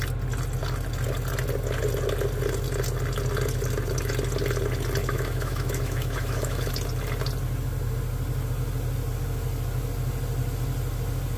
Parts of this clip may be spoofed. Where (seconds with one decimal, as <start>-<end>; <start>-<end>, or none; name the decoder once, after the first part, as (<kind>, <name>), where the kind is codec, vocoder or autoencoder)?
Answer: 5.0-6.7 (autoencoder, DAC-VAE)